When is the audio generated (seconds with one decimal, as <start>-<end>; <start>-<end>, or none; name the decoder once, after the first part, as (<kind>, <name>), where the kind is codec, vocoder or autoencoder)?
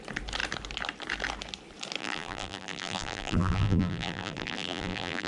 2.0-5.3 (vocoder, BigVGAN v2)